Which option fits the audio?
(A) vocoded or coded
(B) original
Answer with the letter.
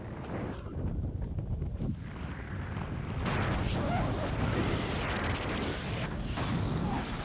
B